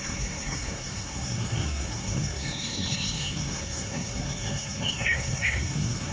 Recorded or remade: remade